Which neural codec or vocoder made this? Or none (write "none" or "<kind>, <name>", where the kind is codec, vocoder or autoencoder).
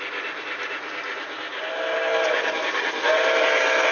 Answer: none